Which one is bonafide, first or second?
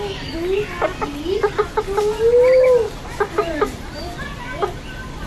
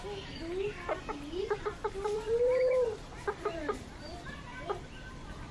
first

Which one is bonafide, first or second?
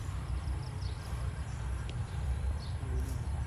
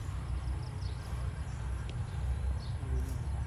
second